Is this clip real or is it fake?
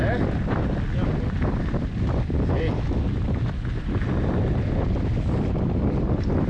real